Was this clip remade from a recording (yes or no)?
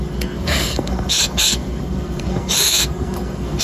yes